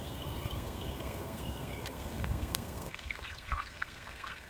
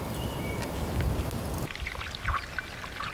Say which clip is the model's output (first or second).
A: first